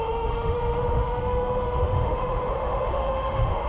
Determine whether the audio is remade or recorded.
remade